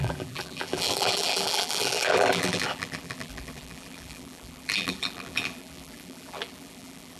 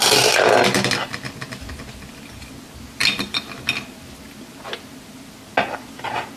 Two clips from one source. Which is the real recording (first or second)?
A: second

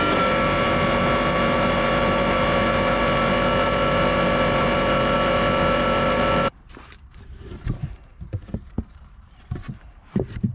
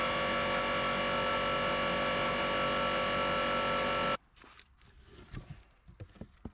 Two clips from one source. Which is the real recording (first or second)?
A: second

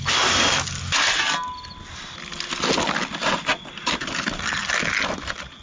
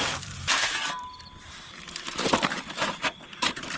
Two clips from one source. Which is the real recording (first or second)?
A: first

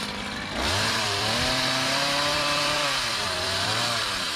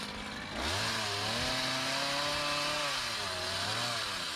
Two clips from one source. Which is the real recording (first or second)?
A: second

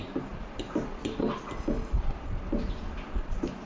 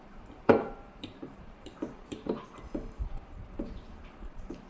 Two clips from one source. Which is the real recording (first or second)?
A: first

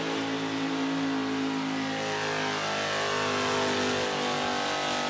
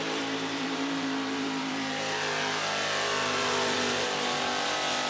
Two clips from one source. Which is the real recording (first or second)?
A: first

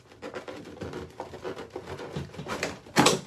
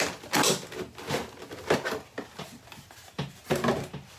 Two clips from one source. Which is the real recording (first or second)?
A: second